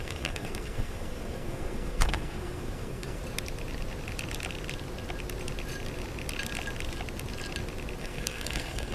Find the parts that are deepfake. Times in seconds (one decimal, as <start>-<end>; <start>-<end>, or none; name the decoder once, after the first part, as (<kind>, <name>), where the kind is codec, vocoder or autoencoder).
0.0-3.2 (codec, SNAC); 8.0-8.9